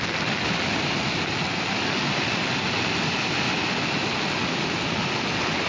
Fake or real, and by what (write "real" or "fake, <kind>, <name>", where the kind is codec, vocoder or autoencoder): real